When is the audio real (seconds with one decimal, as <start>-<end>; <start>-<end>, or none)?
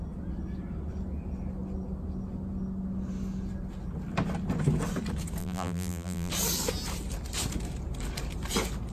0.0-5.4; 6.3-8.9